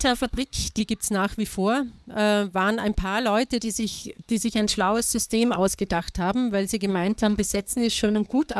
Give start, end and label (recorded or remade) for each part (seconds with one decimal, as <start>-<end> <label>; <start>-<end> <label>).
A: 0.0-0.8 remade; 0.8-3.6 recorded; 3.6-6.0 remade; 6.0-6.9 recorded; 6.9-8.6 remade